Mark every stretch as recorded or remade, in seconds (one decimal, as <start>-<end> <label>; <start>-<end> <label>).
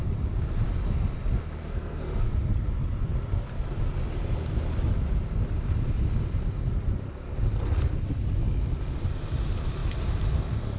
0.0-1.6 recorded; 1.6-2.3 remade; 2.3-10.8 recorded